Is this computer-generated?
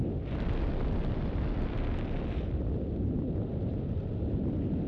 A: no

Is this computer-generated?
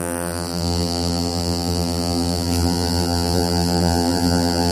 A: yes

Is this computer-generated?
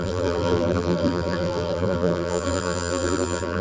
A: yes